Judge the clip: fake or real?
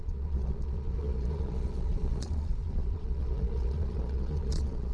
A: fake